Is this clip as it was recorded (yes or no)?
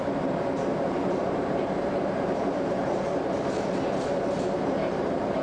no